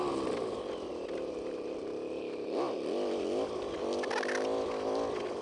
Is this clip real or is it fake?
real